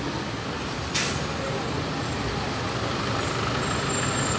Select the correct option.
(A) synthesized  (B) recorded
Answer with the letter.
B